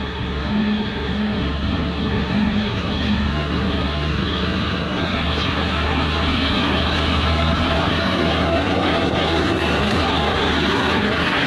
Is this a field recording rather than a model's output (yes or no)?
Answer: no